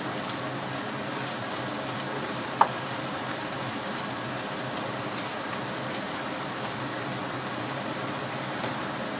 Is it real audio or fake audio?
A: real